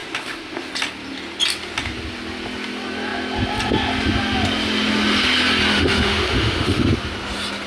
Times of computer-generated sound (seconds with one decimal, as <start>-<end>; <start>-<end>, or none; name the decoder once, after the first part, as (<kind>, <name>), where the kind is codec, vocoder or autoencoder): 0.0-0.7 (autoencoder, DAC-VAE); 5.7-6.9